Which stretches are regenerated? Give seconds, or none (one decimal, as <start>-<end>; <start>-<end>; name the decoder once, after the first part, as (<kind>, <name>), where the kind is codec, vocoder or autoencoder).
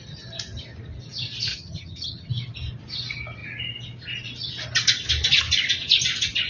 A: 1.5-2.3 (vocoder, HiFi-GAN)